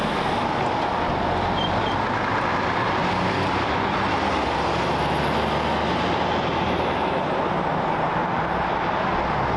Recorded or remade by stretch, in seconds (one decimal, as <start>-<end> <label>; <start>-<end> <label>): 0.0-9.6 recorded